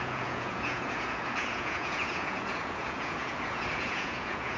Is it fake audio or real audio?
fake